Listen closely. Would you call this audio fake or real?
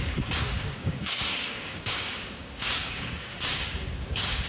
fake